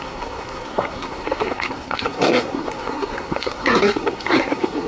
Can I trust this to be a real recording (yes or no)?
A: no